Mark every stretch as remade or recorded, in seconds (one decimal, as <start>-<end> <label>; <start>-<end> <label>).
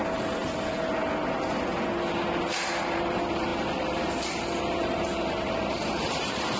0.0-0.4 remade; 0.4-2.8 recorded; 2.8-6.6 remade